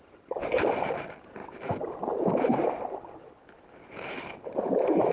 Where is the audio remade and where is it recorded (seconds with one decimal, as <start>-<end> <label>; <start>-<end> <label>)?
0.0-5.1 recorded